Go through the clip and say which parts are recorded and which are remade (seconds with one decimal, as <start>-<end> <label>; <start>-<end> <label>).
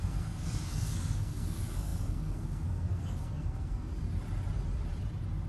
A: 0.0-3.9 remade; 3.9-5.5 recorded